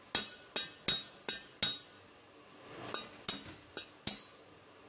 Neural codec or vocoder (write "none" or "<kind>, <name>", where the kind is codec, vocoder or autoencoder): none